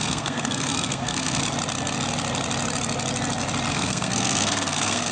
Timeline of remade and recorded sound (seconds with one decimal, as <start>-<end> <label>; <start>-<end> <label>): 0.0-1.4 remade; 1.4-3.7 recorded; 3.7-5.1 remade